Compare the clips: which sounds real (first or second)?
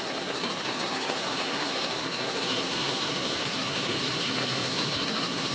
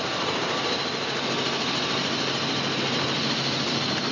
second